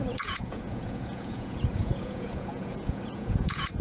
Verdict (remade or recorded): remade